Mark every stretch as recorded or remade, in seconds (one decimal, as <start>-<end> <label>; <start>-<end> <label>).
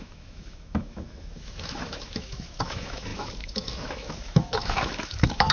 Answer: 0.0-5.5 remade